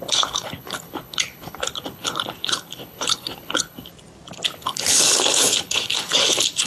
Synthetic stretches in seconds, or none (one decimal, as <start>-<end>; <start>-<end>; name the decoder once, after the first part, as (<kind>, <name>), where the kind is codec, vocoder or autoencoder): 0.0-3.9 (codec, HILCodec); 4.5-6.7